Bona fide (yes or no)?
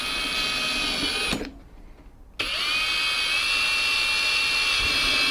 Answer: yes